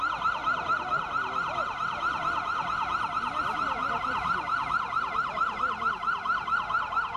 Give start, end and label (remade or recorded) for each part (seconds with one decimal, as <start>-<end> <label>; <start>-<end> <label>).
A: 0.0-3.8 recorded; 3.8-5.9 remade; 5.9-7.2 recorded

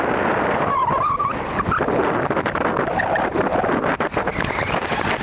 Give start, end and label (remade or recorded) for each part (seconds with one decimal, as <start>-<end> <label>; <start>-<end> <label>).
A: 0.0-5.2 recorded

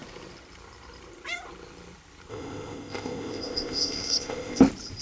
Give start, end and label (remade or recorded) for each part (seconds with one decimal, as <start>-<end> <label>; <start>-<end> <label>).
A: 0.0-2.3 recorded; 2.3-4.6 remade; 4.6-5.0 recorded

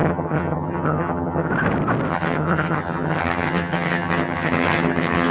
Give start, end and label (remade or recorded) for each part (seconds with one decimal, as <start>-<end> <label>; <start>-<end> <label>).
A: 0.0-1.5 remade; 1.5-2.1 recorded; 2.1-5.3 remade

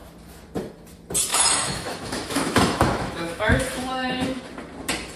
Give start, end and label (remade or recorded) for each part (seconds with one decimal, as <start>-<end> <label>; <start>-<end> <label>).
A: 0.0-1.3 recorded; 1.3-4.4 remade; 4.4-5.2 recorded

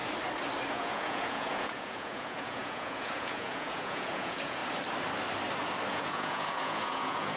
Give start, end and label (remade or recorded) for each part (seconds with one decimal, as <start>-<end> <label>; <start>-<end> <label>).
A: 0.0-0.7 recorded; 0.7-4.6 remade; 4.6-5.9 recorded; 5.9-7.4 remade

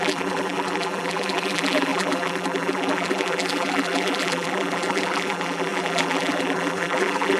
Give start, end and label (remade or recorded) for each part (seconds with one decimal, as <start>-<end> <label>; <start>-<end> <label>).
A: 0.0-7.4 remade